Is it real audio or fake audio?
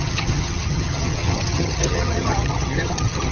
fake